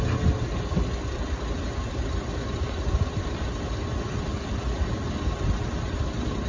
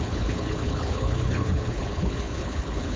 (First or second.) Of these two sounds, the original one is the first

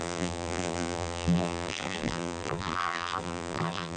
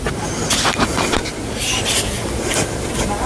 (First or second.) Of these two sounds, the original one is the second